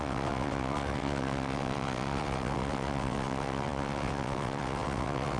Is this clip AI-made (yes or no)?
yes